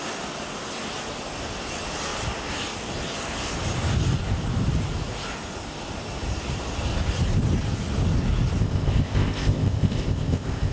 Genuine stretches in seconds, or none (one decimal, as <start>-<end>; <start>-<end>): 0.0-8.6